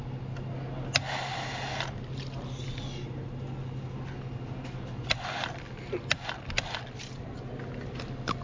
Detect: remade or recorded recorded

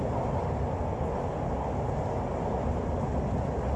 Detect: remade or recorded recorded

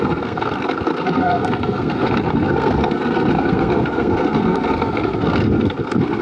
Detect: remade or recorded remade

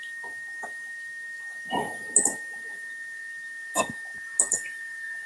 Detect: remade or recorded recorded